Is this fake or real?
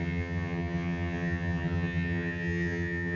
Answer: fake